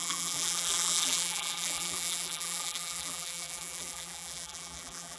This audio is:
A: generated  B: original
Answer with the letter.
A